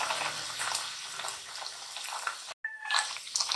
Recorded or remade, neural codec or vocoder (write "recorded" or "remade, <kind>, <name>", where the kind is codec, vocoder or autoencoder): recorded